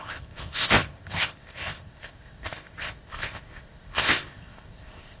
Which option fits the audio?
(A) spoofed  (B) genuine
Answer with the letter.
A